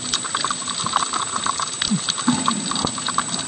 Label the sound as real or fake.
real